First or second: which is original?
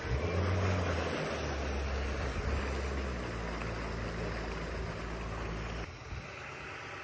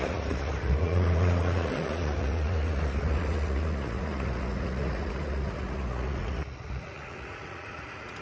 first